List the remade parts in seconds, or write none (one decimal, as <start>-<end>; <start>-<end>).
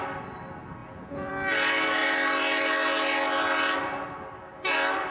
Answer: 0.8-1.3